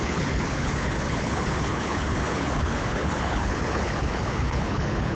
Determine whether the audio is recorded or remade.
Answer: remade